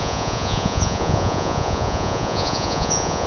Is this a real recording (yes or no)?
no